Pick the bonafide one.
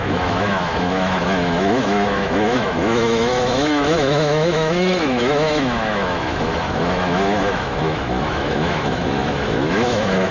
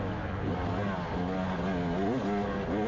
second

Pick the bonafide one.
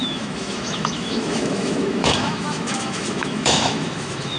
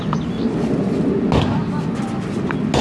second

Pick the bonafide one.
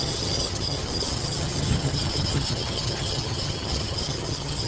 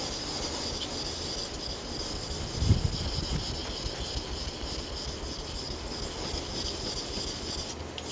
second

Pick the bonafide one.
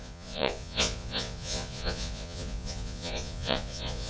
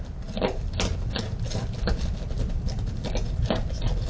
second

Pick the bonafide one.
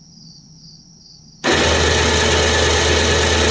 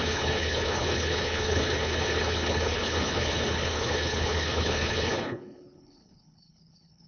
first